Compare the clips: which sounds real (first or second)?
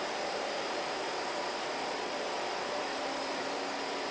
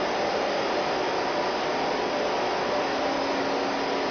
second